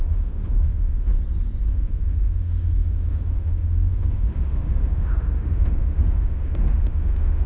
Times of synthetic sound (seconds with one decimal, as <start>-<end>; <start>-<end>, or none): 0.0-1.1; 1.7-7.5